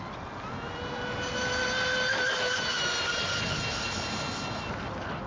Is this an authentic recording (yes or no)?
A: yes